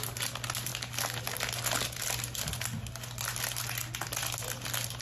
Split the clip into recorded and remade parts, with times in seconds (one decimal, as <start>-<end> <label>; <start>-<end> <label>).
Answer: 0.0-5.0 recorded